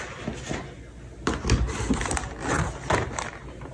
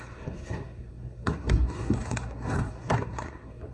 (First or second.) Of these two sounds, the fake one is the second